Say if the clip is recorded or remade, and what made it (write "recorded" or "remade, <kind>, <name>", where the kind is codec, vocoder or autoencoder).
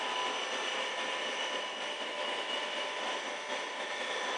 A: recorded